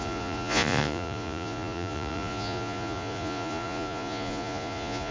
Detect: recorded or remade remade